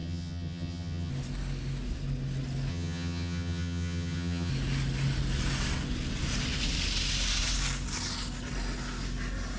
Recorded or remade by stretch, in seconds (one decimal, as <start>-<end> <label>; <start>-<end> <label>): 0.0-1.1 remade; 1.1-2.7 recorded; 2.7-4.5 remade; 4.5-9.6 recorded